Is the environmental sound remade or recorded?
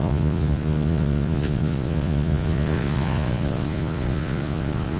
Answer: remade